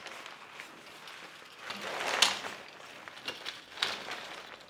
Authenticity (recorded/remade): recorded